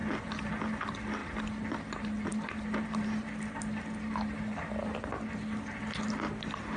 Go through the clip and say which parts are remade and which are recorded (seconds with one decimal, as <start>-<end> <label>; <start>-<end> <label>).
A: 0.0-6.8 recorded